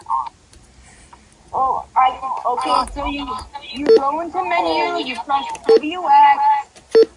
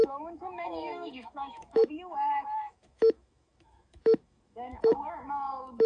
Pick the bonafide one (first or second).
first